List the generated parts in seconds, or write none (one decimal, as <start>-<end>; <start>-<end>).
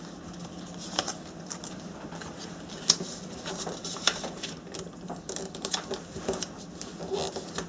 3.8-4.6